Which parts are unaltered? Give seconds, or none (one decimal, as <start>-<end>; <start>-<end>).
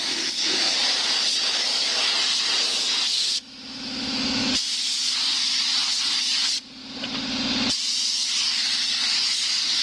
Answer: 0.0-3.1; 4.5-9.8